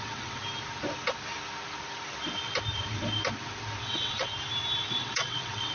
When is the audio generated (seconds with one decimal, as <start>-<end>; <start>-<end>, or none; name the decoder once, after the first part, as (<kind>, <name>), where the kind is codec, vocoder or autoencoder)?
0.0-0.4 (vocoder, WaveNeXt); 3.8-4.3; 4.9-5.7